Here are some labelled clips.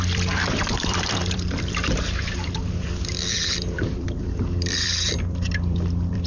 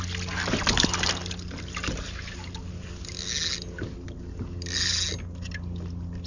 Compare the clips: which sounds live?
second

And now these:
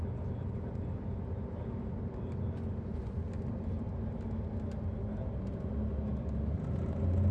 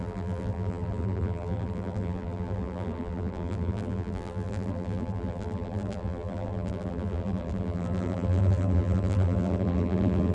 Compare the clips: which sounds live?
first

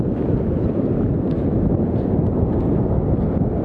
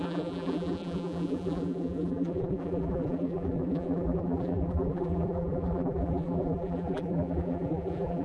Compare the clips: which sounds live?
first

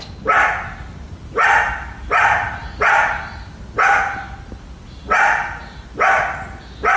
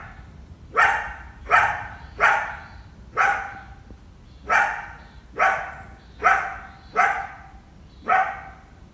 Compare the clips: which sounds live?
first